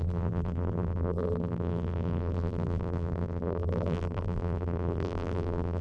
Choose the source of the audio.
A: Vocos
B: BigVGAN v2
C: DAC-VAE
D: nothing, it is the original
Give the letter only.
B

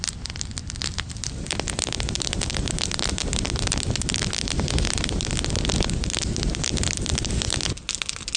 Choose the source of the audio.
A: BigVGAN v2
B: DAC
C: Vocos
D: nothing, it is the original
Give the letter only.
D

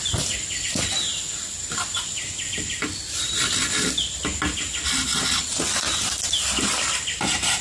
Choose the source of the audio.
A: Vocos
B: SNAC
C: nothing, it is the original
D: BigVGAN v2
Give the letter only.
C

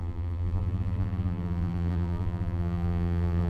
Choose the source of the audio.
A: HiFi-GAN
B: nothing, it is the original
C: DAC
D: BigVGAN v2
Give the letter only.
D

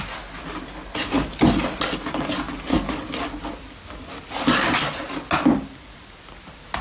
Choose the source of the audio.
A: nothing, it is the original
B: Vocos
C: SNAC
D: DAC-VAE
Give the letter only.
A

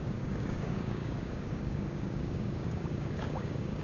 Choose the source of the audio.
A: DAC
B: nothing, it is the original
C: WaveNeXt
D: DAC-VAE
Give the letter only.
A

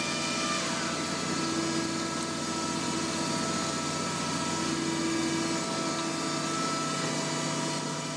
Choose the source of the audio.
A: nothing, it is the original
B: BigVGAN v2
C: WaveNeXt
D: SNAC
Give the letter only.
A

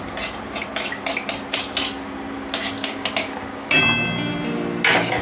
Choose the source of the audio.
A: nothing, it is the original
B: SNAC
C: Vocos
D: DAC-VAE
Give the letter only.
A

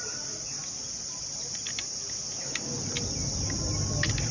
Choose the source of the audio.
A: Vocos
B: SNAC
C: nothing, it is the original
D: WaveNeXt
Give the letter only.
C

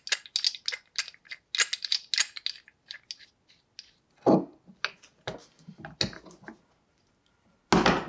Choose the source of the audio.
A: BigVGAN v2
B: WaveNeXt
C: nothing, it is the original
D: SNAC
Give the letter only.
C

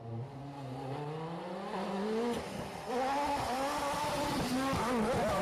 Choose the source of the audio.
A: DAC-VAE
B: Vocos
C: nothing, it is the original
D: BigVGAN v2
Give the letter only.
C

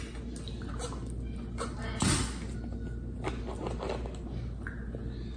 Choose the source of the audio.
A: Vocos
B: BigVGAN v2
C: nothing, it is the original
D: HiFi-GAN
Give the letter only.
C